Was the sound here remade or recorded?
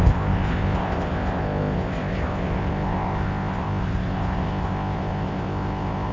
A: remade